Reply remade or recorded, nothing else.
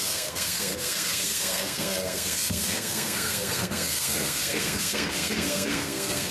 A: remade